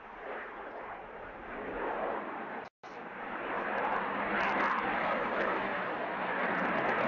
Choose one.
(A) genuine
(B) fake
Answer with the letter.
A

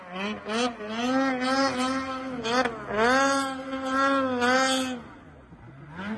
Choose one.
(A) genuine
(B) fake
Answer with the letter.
A